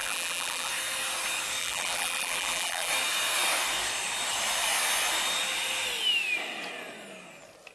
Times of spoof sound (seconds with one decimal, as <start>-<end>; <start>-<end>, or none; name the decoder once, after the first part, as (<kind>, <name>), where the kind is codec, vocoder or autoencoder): 0.0-0.7 (vocoder, BigVGAN v2); 1.6-2.9